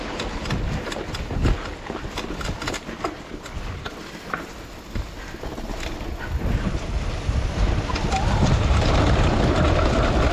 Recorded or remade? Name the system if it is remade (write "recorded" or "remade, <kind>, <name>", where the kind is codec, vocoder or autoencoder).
recorded